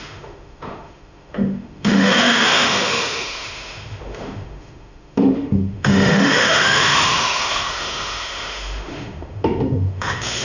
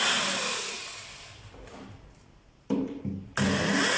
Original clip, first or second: second